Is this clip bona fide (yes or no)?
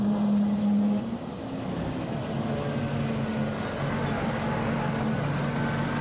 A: yes